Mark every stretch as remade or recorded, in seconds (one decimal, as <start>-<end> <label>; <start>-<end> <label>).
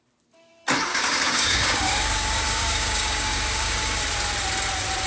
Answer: 0.0-0.9 recorded; 0.9-4.0 remade; 4.0-5.1 recorded